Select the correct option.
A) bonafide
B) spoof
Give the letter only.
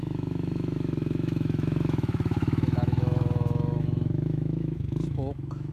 B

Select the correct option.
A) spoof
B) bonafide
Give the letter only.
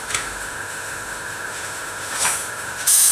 A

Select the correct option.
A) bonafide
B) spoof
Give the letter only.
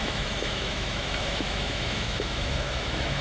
B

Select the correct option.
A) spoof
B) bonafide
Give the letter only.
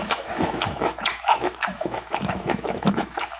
A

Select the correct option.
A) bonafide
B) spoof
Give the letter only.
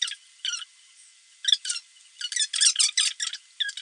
A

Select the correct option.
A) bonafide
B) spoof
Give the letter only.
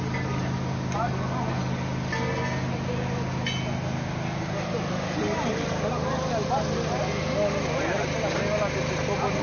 A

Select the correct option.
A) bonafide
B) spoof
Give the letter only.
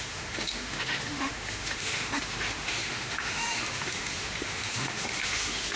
B